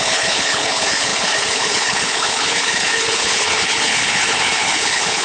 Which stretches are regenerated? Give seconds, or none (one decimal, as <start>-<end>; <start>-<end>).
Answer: 0.0-5.2